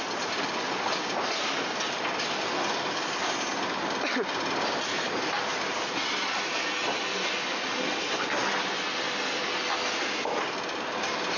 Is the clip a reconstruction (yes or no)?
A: no